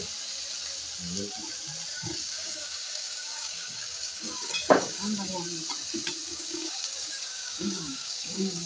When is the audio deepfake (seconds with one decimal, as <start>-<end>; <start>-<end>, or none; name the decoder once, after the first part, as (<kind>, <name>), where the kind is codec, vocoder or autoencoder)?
1.9-5.3 (codec, DAC); 6.3-8.7